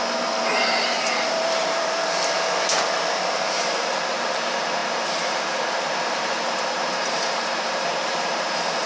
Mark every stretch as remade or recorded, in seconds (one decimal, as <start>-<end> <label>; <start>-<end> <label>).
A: 0.0-8.9 remade